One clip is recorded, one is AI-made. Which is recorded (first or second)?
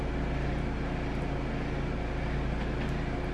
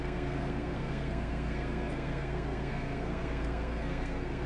first